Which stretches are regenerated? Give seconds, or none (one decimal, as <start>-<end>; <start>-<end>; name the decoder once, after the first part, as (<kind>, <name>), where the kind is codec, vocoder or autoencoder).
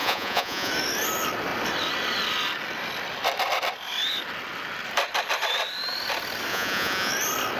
0.0-0.7 (vocoder, Vocos); 6.5-7.1